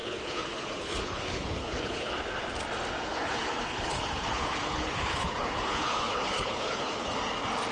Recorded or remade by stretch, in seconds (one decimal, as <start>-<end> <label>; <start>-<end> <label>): 0.0-2.1 remade; 2.1-3.1 recorded; 3.1-7.1 remade; 7.1-7.7 recorded